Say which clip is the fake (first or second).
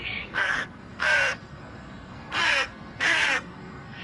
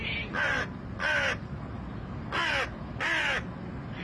first